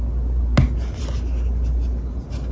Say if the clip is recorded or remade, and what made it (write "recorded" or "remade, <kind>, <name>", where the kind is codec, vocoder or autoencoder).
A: recorded